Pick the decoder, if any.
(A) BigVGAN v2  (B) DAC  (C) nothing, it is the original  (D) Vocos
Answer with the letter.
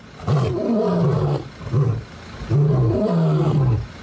C